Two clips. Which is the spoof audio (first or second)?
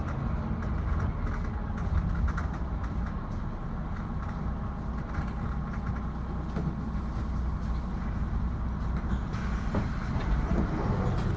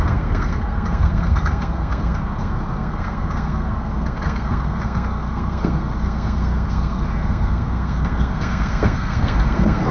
second